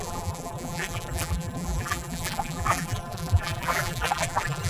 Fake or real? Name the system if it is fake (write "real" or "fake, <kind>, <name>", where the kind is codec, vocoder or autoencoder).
fake, vocoder, BigVGAN v2